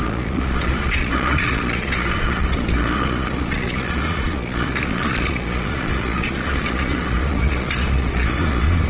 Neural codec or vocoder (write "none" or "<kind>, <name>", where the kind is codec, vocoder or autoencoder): vocoder, Vocos